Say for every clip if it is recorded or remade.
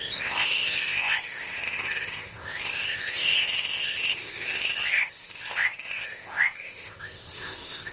remade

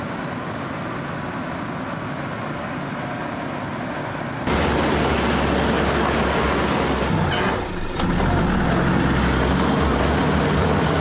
recorded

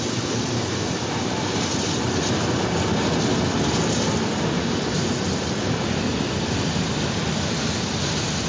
recorded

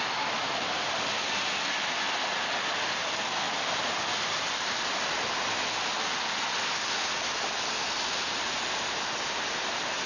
recorded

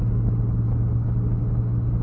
recorded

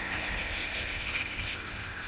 remade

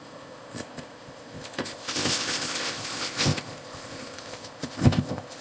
remade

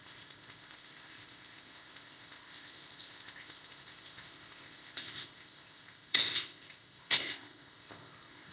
remade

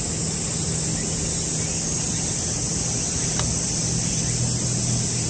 recorded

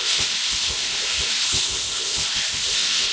remade